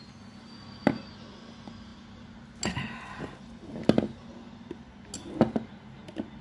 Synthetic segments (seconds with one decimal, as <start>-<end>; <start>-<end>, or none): none